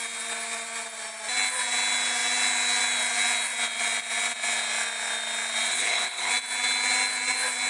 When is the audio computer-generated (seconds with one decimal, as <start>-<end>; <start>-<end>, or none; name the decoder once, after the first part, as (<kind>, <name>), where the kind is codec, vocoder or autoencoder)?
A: 5.7-6.3 (codec, HILCodec)